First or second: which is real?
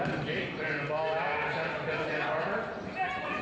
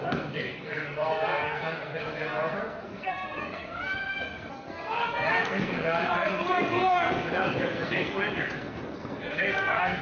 first